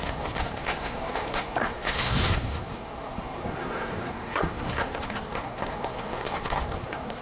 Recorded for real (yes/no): no